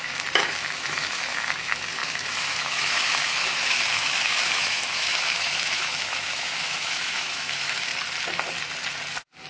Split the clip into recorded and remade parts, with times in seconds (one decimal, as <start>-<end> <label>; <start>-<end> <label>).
0.0-7.9 remade; 7.9-9.5 recorded